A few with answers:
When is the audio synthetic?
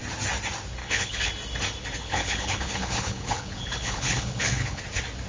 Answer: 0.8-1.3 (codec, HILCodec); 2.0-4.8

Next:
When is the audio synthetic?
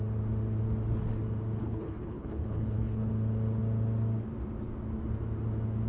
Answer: 1.6-3.1 (codec, HILCodec)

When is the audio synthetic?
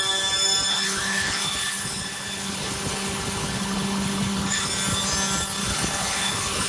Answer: 0.7-4.7 (codec, HILCodec); 5.6-6.7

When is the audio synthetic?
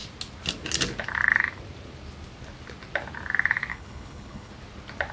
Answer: 3.7-4.5 (codec, HILCodec)